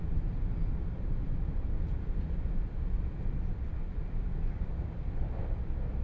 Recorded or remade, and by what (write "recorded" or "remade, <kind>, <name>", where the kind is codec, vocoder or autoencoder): recorded